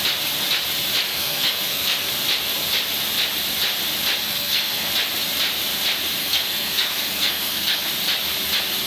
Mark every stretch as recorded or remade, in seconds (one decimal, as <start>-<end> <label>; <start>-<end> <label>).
0.0-1.1 recorded; 1.1-2.1 remade; 2.1-4.2 recorded; 4.2-4.9 remade; 4.9-6.2 recorded; 6.2-7.9 remade; 7.9-8.9 recorded